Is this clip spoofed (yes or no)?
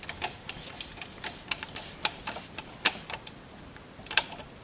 no